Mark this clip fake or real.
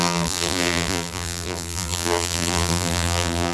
fake